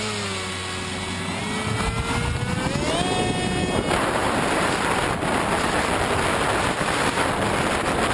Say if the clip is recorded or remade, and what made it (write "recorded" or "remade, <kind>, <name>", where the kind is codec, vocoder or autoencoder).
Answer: recorded